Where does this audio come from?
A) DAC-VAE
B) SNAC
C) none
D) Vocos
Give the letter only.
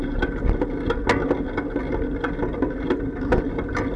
C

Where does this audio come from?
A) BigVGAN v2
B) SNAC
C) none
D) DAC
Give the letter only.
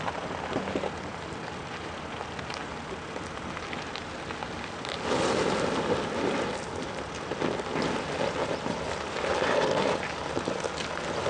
C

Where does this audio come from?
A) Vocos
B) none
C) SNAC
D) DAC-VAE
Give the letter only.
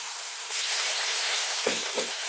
C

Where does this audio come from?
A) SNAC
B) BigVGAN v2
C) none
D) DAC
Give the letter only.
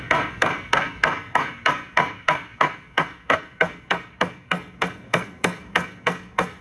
A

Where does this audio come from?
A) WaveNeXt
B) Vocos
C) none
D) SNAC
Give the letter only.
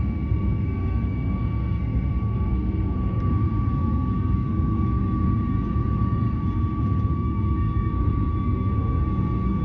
D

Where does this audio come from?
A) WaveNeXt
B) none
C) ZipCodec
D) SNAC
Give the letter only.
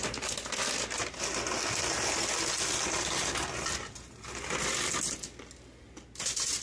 B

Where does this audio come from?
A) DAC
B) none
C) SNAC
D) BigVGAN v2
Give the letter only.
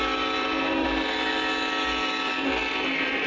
B